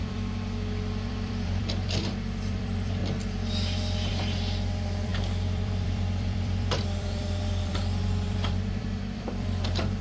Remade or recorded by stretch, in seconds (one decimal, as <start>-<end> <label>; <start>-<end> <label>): 0.0-3.0 remade; 3.0-4.1 recorded; 4.1-10.0 remade